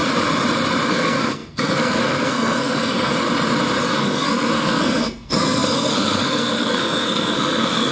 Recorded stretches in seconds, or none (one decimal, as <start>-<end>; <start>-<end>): 0.0-0.9; 3.2-3.8